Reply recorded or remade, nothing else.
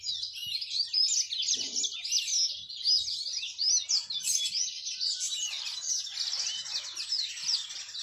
recorded